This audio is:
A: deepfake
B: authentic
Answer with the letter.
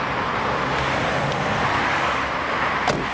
B